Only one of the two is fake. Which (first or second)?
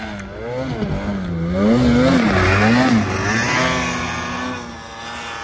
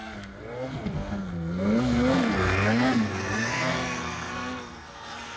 second